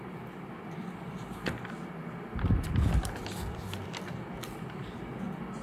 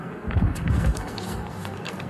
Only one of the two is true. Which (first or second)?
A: first